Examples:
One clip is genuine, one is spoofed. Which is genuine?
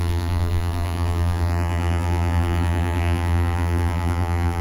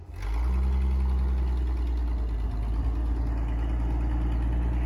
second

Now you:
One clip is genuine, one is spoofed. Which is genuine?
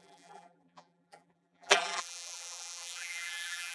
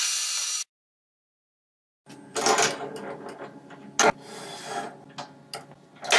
second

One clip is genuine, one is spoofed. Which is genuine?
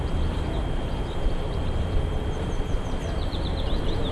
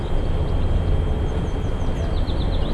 second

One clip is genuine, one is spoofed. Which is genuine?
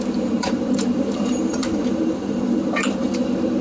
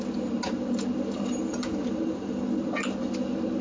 second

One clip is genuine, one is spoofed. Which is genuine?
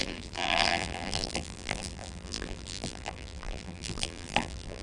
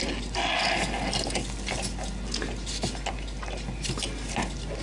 second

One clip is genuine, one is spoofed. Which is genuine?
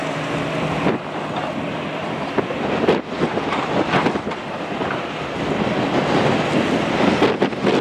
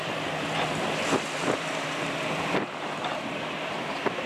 first